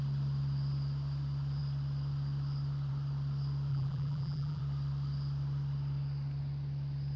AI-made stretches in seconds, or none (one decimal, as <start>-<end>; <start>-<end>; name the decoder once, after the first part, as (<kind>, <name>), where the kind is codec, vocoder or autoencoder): 3.7-4.6 (vocoder, BigVGAN v2)